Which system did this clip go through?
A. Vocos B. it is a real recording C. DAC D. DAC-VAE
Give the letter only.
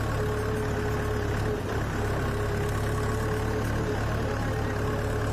B